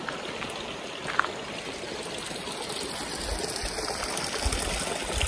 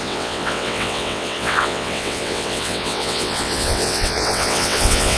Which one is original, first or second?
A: first